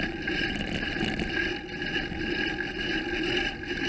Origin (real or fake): real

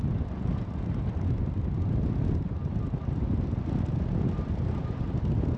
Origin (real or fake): real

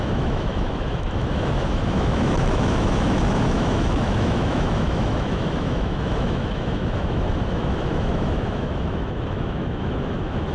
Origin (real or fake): fake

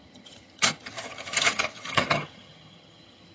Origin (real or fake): fake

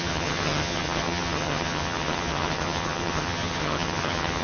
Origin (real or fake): fake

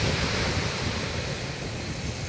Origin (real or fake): real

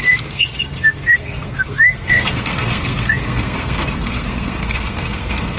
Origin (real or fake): fake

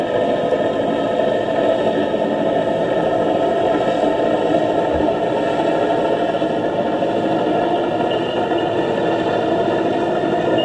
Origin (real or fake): real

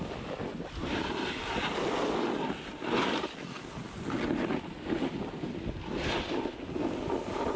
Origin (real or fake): real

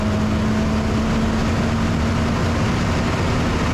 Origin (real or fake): real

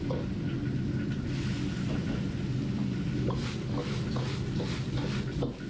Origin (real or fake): real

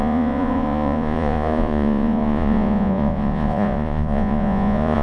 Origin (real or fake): fake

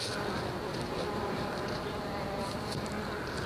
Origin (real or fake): real